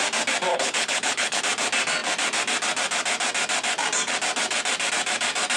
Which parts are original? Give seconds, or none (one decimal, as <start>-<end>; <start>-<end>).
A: 0.0-0.5; 1.4-5.6